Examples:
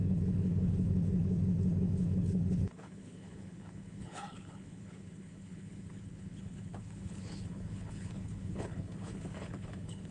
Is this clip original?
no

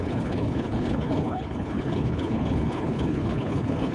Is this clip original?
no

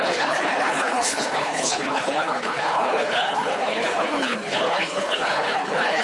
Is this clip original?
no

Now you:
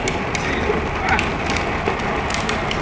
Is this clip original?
yes